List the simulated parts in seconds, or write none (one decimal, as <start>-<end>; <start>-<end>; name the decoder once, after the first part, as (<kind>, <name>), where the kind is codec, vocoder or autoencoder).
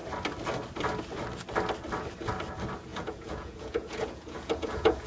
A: 2.9-5.1 (vocoder, Vocos)